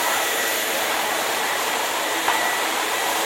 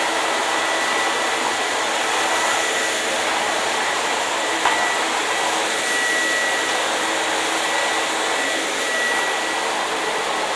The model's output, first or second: first